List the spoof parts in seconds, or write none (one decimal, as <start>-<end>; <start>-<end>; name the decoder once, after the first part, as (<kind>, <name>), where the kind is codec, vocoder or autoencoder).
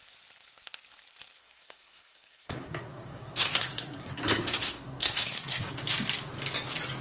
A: 1.4-5.6 (codec, SNAC)